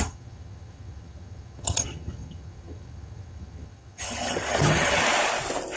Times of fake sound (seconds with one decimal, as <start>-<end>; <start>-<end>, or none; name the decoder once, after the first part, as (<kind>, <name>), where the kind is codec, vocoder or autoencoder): 0.0-5.0 (vocoder, HiFi-GAN)

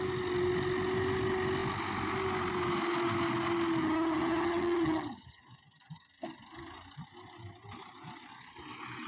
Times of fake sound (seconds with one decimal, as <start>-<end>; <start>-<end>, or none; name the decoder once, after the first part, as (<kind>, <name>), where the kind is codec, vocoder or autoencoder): 3.8-5.4 (vocoder, HiFi-GAN)

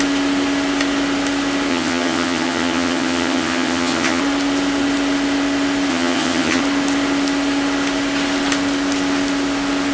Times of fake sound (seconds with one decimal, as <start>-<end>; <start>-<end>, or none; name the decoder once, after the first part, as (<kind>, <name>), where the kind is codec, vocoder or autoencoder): 1.7-4.2 (vocoder, HiFi-GAN); 5.9-6.6